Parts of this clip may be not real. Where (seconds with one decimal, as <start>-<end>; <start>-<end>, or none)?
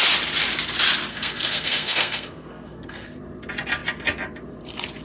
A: 1.1-3.2